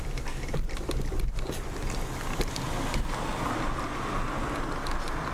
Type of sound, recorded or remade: recorded